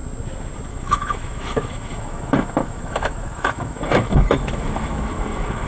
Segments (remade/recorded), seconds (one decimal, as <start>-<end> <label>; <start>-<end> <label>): 0.0-0.7 recorded; 0.7-5.7 remade